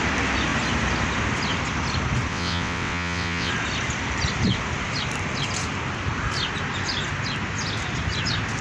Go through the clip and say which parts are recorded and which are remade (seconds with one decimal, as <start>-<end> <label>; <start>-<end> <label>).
0.0-2.3 recorded; 2.3-3.5 remade; 3.5-8.6 recorded